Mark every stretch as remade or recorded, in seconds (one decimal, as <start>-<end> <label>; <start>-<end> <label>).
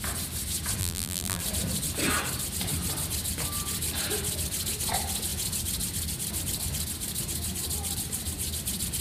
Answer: 0.0-0.8 recorded; 0.8-1.4 remade; 1.4-9.0 recorded